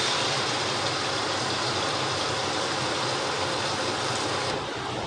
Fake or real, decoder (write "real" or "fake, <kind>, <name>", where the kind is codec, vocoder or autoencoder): fake, vocoder, BigVGAN v2